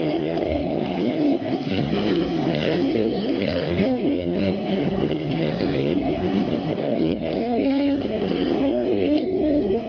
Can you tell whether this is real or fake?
fake